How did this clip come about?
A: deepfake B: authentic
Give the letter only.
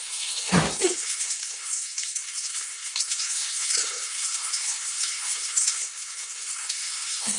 A